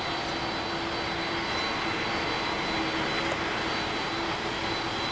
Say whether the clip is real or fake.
real